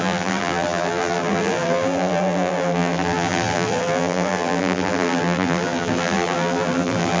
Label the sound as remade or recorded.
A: remade